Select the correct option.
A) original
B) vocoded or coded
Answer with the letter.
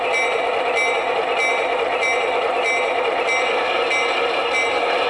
A